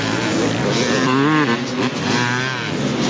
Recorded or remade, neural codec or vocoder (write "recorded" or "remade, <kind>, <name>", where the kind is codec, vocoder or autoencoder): recorded